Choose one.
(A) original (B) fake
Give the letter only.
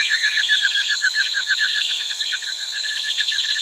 B